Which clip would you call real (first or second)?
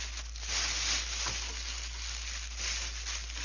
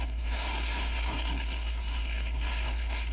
first